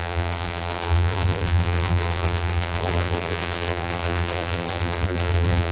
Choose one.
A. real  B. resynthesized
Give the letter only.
B